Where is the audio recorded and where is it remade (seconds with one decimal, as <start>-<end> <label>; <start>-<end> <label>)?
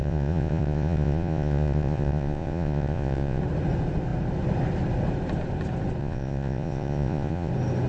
0.0-3.4 remade; 3.4-6.0 recorded; 6.0-7.5 remade; 7.5-7.9 recorded